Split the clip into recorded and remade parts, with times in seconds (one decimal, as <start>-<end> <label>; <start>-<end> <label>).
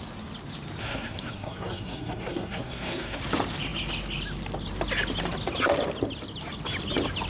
0.0-0.8 recorded; 0.8-3.2 remade; 3.2-7.3 recorded